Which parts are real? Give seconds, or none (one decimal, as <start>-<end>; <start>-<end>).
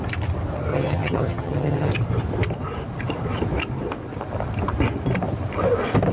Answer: 0.0-0.7; 1.9-6.1